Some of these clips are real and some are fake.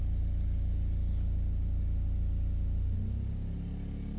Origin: real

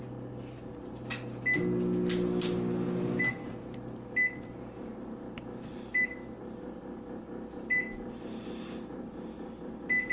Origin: real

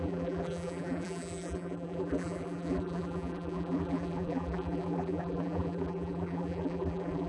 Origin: fake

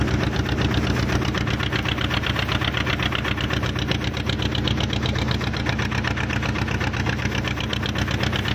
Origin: real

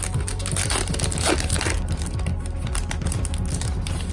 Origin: real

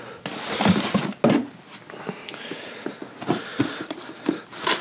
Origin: real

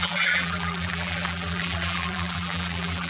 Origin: fake